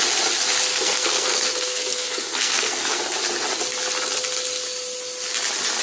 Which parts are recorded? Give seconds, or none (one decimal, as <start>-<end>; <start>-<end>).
0.0-0.7; 3.0-5.8